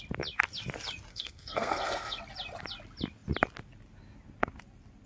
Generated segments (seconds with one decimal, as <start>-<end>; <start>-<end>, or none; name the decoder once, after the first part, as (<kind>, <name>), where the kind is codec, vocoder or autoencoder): 1.1-2.2 (codec, SNAC)